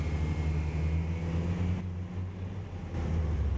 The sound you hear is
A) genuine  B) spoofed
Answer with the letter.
A